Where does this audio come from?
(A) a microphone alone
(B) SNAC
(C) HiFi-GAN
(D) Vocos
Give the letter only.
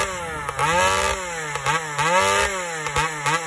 A